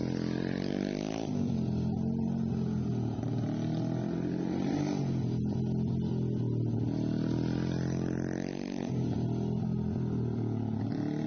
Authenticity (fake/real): real